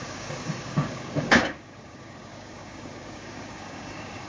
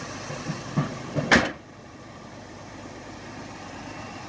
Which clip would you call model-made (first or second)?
first